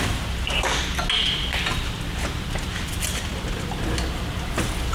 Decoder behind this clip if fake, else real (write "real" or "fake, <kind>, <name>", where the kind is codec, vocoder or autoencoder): real